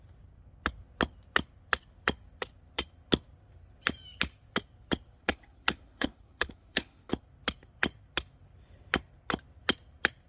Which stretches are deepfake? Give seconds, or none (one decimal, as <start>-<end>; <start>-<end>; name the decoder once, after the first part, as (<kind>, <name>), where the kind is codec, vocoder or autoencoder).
5.2-7.1 (codec, HILCodec)